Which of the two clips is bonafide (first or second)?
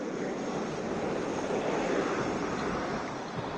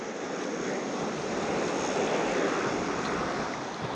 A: second